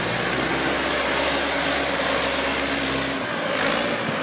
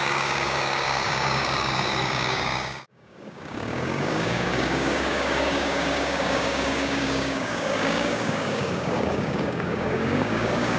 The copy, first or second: second